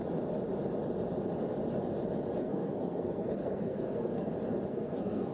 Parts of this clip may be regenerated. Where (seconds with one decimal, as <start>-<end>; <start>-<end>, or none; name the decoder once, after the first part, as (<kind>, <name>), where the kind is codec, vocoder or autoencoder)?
2.4-4.3 (codec, SNAC); 4.7-5.3